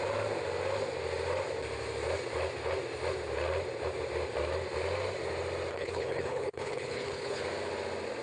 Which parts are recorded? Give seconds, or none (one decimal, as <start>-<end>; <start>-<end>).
0.0-5.7; 7.4-8.2